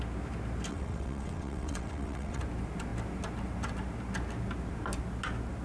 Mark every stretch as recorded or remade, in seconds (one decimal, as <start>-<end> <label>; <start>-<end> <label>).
0.0-0.7 recorded; 0.7-2.4 remade; 2.4-5.6 recorded